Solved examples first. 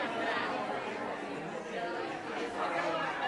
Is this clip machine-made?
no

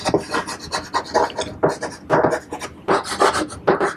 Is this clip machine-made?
no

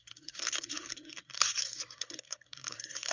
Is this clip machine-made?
yes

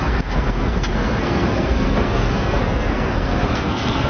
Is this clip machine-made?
yes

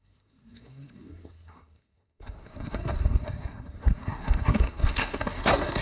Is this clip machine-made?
yes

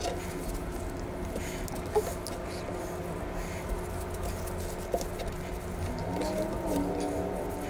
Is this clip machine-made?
no